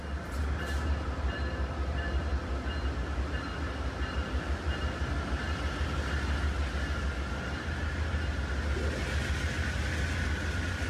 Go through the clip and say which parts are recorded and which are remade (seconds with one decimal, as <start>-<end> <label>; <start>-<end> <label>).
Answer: 0.0-0.4 recorded; 0.4-2.2 remade; 2.2-10.9 recorded